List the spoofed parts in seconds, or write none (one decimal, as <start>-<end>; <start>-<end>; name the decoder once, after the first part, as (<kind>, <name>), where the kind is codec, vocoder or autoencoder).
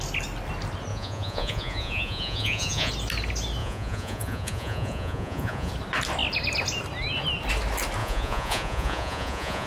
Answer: 0.9-2.9 (vocoder, Vocos); 3.6-5.7; 8.0-9.7